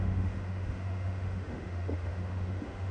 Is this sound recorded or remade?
remade